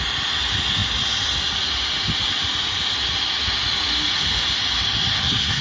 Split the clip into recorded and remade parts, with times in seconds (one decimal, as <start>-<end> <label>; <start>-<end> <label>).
0.0-5.1 recorded; 5.1-5.6 remade